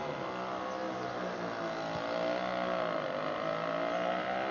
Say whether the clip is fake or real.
real